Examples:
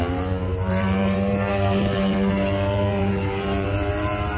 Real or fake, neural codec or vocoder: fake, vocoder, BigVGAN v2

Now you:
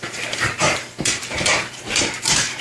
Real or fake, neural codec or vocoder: fake, vocoder, BigVGAN v2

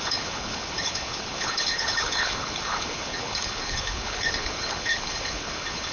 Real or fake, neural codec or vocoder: fake, codec, HILCodec